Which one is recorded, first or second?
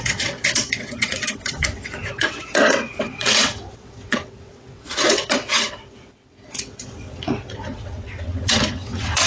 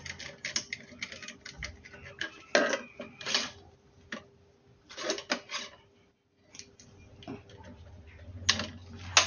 second